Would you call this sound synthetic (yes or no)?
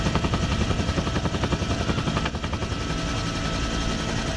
no